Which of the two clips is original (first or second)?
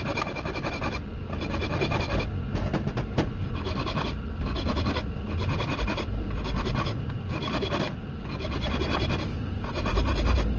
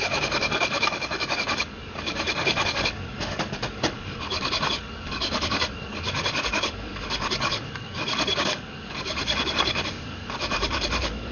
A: first